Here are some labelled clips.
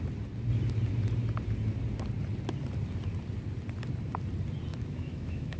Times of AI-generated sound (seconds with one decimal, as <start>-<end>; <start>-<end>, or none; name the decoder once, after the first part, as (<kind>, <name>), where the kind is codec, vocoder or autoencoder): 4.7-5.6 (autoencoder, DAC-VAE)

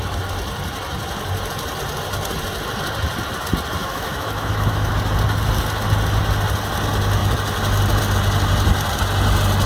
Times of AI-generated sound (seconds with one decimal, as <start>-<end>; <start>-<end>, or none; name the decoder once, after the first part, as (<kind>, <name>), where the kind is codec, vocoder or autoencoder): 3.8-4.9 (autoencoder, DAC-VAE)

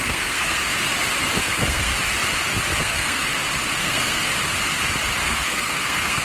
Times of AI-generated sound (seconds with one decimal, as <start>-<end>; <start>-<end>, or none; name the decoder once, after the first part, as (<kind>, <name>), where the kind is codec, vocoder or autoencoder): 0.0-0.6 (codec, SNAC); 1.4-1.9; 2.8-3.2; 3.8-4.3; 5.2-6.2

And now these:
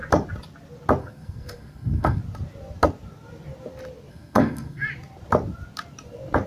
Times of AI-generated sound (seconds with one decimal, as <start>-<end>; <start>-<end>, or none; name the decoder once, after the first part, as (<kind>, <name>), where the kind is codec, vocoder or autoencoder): 1.0-2.2 (codec, SNAC); 4.1-4.9